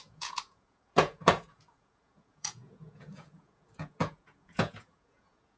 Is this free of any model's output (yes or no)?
no